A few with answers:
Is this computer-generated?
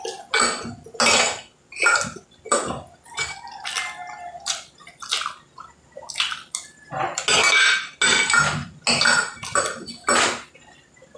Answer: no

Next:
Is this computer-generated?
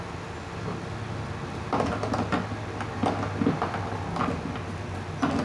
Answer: no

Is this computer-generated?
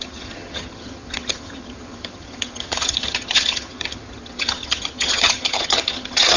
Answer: yes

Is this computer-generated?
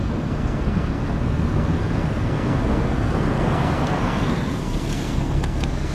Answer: yes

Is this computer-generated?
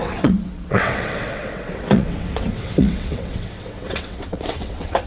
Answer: yes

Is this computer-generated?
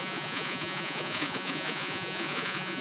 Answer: yes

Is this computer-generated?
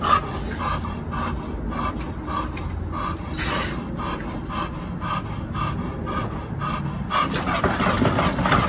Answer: no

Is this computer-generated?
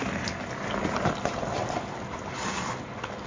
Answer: no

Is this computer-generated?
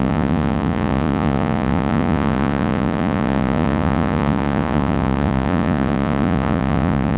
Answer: yes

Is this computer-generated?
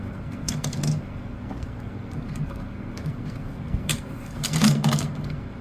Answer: yes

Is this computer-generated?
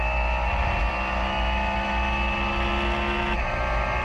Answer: no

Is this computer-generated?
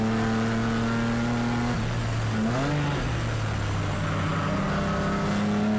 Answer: no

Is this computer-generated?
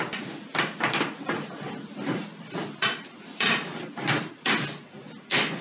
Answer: no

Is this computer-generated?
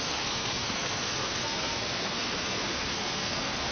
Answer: yes